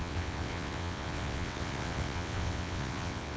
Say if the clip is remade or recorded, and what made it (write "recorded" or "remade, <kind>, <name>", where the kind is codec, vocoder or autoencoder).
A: remade, vocoder, WaveNeXt